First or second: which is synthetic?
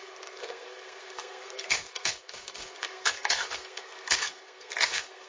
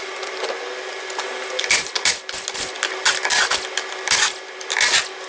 first